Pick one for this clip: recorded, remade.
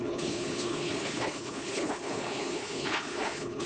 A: remade